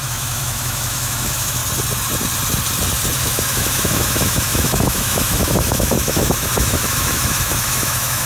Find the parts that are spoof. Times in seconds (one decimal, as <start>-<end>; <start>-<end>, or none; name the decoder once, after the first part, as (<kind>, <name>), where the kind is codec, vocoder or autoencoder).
0.0-1.6 (autoencoder, DAC-VAE); 3.2-8.3